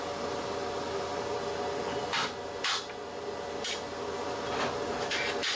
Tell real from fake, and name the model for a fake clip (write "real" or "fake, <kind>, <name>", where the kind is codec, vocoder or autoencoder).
real